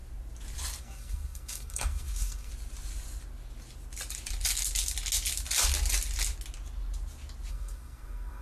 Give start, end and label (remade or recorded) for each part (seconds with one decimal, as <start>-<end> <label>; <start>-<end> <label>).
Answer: 0.0-0.8 recorded; 0.8-2.5 remade; 2.5-7.5 recorded; 7.5-8.4 remade